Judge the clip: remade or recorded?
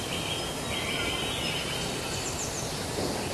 recorded